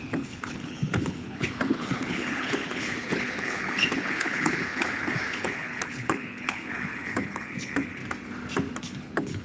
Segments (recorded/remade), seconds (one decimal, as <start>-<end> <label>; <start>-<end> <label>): 0.0-8.0 remade; 8.0-8.8 recorded; 8.8-9.4 remade